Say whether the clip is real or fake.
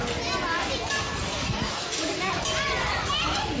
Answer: real